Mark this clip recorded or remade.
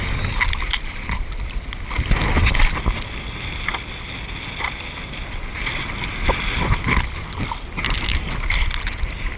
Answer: recorded